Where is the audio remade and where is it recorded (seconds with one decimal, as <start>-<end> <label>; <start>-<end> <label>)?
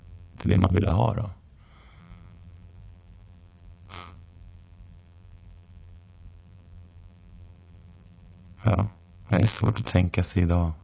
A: 0.0-0.9 remade; 0.9-2.0 recorded; 2.0-9.9 remade; 9.9-10.8 recorded